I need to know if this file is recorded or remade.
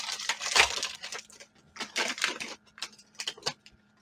remade